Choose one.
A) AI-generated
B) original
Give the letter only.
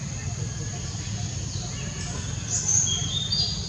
B